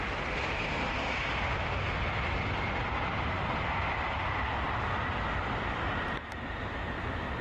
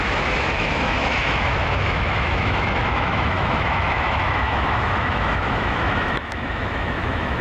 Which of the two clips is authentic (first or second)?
first